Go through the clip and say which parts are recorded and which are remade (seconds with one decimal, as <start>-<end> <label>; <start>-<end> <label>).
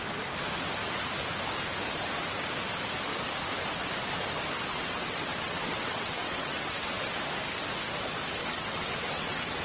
0.0-4.7 recorded; 4.7-7.2 remade; 7.2-8.4 recorded; 8.4-9.6 remade